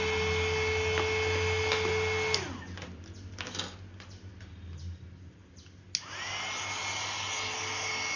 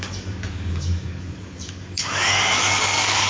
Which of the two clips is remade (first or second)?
second